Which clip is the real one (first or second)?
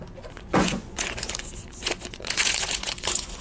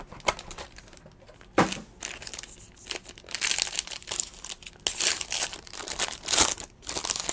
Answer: second